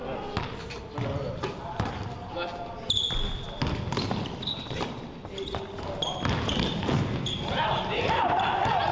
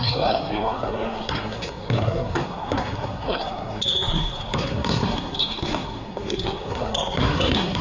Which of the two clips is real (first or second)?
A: first